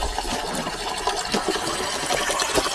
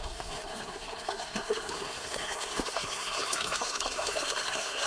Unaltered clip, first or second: first